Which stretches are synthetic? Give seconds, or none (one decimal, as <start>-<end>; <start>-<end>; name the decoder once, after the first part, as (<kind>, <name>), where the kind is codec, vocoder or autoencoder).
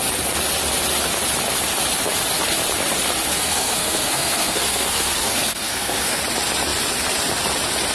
3.3-6.2 (codec, SNAC)